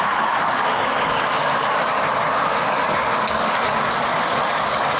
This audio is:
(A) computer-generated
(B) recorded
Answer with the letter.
A